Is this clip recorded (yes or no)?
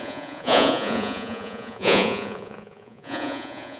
no